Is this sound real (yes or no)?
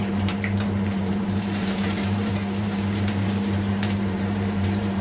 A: no